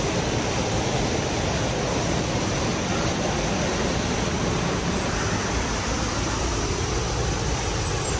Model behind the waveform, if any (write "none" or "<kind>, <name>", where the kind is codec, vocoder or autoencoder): none